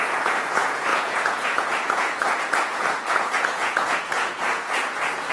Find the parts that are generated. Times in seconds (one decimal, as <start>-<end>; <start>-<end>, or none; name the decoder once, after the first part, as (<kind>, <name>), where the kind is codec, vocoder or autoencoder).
0.0-5.3 (vocoder, Vocos)

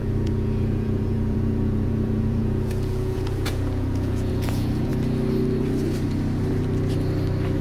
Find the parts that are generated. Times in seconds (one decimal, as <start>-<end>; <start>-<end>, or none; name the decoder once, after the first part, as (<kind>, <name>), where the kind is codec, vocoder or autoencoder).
0.0-4.9 (vocoder, Vocos)

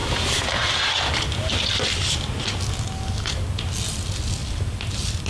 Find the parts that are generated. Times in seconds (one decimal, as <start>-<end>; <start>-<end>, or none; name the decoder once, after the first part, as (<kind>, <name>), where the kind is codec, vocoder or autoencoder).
4.4-5.3 (vocoder, BigVGAN v2)

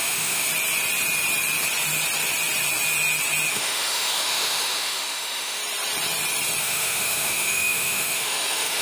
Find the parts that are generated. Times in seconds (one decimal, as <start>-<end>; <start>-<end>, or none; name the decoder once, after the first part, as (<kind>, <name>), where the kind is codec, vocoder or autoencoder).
0.0-0.5 (autoencoder, DAC-VAE); 3.5-5.6; 6.6-8.8

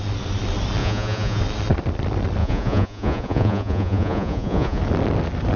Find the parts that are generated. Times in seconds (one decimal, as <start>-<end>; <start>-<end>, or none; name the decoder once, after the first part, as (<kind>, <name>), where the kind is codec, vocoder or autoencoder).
0.8-1.4 (vocoder, Vocos); 2.4-4.8

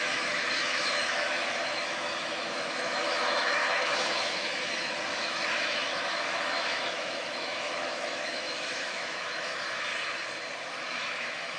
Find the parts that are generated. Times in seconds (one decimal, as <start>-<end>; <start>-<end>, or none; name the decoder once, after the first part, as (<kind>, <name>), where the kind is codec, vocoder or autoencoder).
0.0-9.9 (autoencoder, DAC-VAE); 10.7-11.6

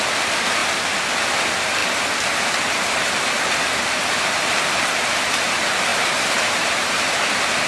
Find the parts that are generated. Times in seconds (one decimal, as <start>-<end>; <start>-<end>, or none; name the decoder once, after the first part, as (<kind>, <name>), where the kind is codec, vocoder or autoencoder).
5.9-6.9 (vocoder, BigVGAN v2)

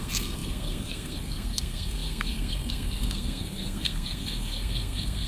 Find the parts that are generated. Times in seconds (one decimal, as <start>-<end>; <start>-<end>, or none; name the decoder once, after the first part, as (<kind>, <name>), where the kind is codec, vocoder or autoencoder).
0.0-5.3 (codec, SNAC)